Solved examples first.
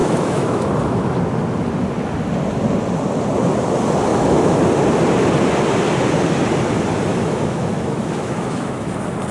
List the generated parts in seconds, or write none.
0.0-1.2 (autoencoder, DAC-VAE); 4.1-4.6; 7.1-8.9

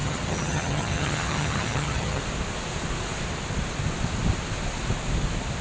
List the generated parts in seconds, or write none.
0.0-2.2 (vocoder, HiFi-GAN)

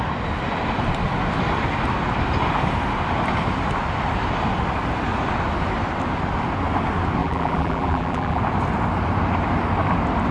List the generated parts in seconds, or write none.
7.2-8.4 (vocoder, BigVGAN v2)

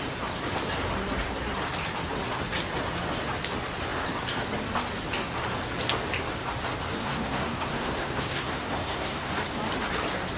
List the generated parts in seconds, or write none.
7.0-9.3 (codec, SNAC)

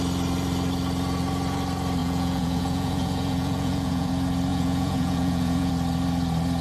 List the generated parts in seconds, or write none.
2.0-4.1 (vocoder, Vocos); 4.5-5.7